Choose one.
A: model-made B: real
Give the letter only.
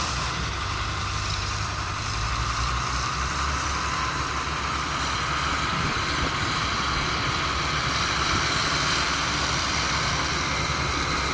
A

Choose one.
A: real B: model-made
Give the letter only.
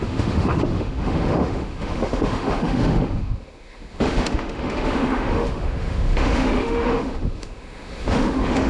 B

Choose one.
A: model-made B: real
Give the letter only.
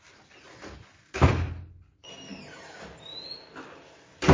B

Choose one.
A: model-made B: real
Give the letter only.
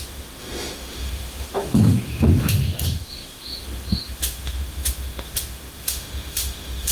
A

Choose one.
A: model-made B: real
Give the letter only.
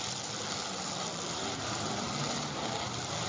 B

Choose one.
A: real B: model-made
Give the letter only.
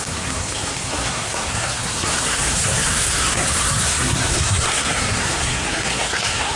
B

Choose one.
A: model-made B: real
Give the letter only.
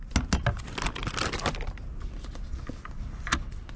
B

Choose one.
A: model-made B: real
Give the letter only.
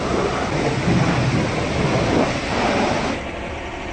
B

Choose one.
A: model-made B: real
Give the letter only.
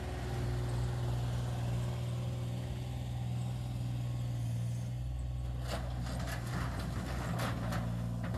B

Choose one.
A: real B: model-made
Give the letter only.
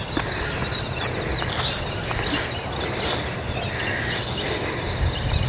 A